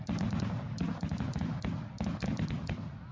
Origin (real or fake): real